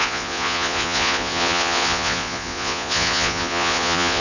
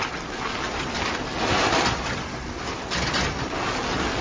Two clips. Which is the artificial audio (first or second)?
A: first